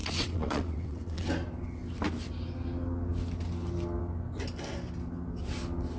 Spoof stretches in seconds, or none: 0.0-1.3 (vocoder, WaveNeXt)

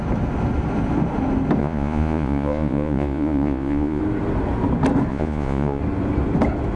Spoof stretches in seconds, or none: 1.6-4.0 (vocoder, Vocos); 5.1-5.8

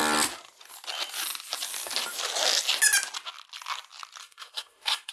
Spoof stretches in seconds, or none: 4.2-5.1 (codec, SNAC)